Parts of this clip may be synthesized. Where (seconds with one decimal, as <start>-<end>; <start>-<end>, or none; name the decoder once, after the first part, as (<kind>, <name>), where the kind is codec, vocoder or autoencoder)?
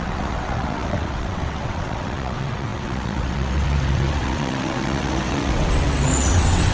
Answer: 0.0-6.7 (vocoder, WaveNeXt)